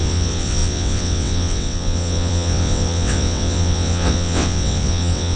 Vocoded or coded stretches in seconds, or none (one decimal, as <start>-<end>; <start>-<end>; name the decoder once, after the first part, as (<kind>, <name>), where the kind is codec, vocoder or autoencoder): 0.0-5.4 (vocoder, WaveNeXt)